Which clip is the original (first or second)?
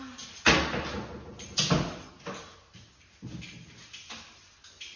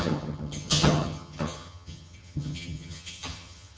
first